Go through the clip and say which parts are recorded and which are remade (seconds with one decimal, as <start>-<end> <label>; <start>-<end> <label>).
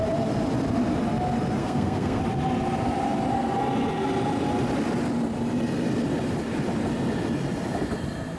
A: 0.0-1.6 recorded; 1.6-2.2 remade; 2.2-8.4 recorded